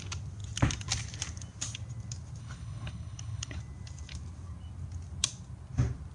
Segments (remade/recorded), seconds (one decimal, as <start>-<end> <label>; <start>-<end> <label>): 0.0-2.4 recorded; 2.4-3.6 remade; 3.6-6.1 recorded